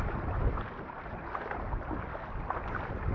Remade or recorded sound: recorded